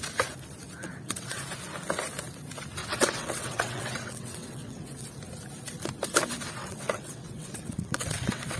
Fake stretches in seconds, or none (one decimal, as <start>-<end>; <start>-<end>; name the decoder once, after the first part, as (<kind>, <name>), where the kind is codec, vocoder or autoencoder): 0.8-1.4 (vocoder, WaveNeXt); 2.8-5.1; 6.6-8.6